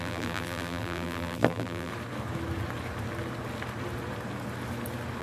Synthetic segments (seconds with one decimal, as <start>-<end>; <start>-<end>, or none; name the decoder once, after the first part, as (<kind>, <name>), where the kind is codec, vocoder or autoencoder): 0.0-1.9 (vocoder, BigVGAN v2)